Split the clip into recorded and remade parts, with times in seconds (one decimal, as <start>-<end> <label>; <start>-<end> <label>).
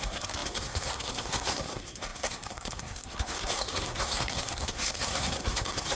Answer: 0.0-5.9 remade